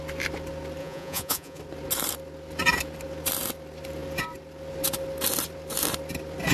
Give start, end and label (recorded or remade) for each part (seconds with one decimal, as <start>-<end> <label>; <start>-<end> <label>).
0.0-0.8 recorded; 0.8-1.6 remade; 1.6-6.5 recorded